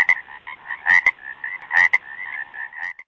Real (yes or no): yes